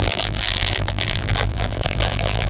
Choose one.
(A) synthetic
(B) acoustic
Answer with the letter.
A